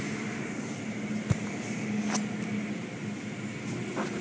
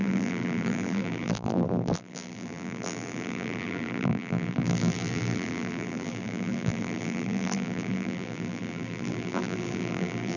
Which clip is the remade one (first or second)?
second